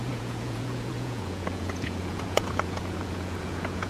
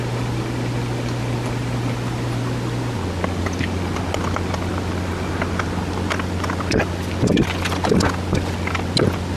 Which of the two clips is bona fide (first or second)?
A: second